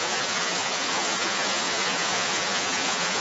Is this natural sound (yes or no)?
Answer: no